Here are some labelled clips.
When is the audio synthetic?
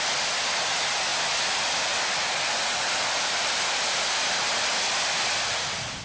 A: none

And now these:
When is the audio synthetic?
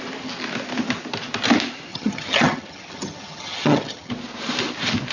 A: 1.9-4.1 (vocoder, HiFi-GAN)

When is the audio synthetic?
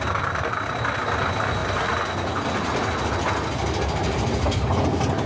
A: none